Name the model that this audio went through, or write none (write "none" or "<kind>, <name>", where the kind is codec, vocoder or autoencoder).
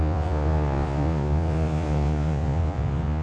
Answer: vocoder, Vocos